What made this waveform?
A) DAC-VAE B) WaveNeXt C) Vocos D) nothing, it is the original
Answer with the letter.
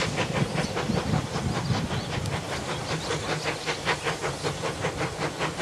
D